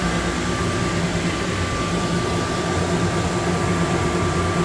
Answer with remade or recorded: recorded